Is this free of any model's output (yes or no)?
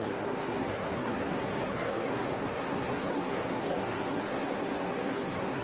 no